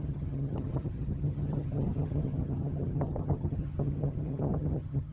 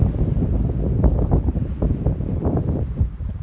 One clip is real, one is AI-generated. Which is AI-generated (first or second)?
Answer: first